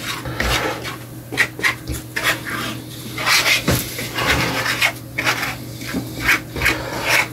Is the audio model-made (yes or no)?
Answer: no